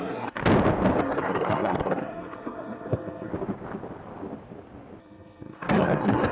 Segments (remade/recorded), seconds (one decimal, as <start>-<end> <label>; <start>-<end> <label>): 0.0-0.4 remade; 0.4-1.0 recorded; 1.0-3.3 remade; 3.3-5.0 recorded; 5.0-6.3 remade